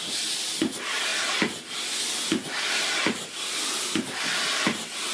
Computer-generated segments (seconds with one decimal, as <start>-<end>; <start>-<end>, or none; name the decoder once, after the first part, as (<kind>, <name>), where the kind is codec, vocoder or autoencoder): none